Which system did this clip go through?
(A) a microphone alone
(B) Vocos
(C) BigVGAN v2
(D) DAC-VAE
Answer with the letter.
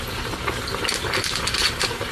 A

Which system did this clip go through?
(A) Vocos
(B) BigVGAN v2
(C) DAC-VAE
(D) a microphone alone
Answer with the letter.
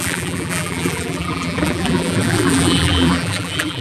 B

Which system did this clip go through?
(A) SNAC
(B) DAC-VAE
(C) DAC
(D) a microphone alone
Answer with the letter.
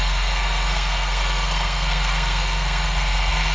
A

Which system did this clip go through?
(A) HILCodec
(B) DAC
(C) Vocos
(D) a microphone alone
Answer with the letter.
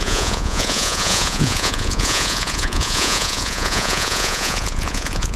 C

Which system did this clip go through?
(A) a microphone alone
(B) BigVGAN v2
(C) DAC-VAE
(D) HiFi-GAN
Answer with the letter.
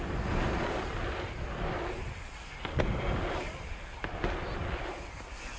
A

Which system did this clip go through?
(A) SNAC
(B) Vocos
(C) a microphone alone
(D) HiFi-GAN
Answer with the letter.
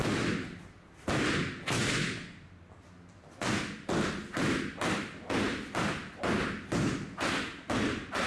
C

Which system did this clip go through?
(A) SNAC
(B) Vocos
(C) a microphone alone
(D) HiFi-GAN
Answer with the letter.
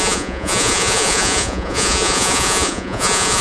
B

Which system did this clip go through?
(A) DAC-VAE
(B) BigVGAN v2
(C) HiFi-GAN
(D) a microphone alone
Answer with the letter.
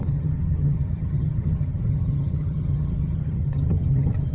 C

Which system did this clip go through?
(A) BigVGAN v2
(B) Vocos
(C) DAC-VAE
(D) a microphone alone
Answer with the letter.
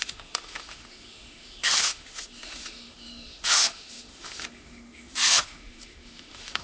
C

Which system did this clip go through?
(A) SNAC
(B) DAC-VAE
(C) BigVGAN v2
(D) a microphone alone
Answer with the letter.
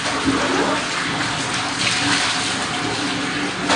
D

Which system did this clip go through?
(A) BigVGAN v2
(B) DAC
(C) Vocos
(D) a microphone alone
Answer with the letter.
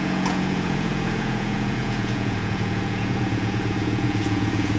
C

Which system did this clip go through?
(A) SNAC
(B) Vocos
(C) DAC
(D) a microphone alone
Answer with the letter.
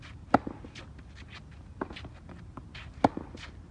D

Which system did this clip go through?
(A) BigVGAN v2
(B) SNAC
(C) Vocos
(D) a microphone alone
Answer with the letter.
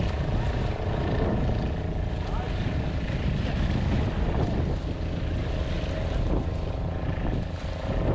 D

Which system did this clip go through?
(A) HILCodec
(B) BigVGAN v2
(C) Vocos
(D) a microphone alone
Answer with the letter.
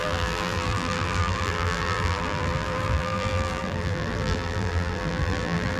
B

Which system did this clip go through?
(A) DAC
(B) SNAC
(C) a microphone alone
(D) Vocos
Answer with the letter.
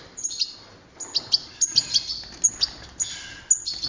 C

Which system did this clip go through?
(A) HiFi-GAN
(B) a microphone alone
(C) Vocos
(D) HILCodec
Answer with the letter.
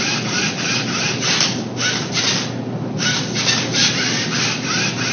B